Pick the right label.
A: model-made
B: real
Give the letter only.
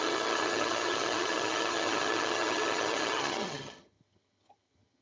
A